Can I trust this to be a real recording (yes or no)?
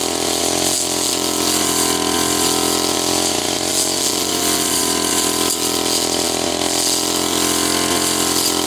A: yes